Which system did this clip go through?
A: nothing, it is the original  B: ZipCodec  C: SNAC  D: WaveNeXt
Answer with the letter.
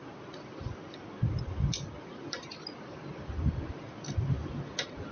A